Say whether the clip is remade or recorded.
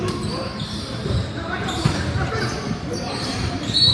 remade